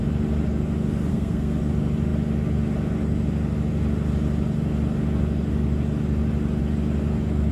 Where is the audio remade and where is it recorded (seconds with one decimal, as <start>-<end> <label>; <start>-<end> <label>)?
0.0-1.1 recorded; 1.1-1.6 remade; 1.6-7.5 recorded